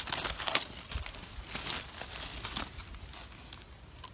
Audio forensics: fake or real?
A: real